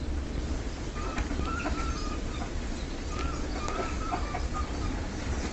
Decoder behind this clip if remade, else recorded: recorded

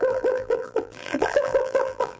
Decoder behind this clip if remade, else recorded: remade, vocoder, BigVGAN v2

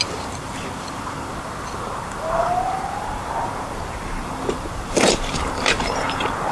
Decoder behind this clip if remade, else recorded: remade, vocoder, BigVGAN v2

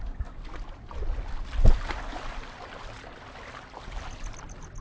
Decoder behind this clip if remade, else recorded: recorded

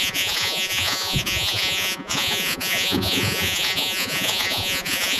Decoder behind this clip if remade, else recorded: remade, vocoder, Vocos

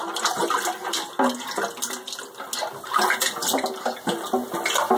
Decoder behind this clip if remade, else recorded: recorded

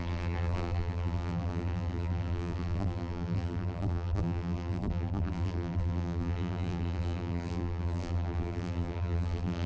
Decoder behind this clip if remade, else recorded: remade, vocoder, BigVGAN v2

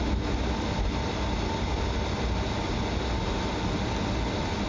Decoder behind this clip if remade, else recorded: recorded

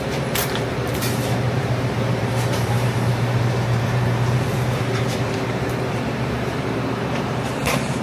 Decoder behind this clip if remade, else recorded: remade, vocoder, BigVGAN v2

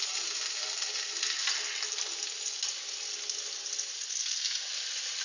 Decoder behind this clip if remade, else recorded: recorded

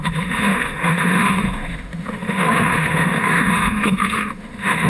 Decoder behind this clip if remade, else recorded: remade, autoencoder, DAC-VAE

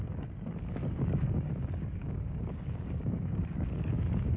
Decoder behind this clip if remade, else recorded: remade, codec, DAC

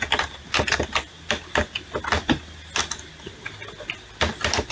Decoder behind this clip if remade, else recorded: recorded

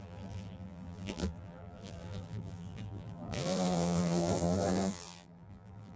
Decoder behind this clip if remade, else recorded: remade, vocoder, BigVGAN v2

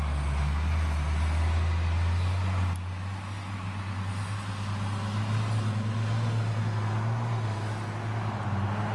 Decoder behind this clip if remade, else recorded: recorded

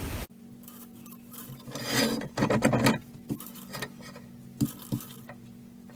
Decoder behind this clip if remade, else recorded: recorded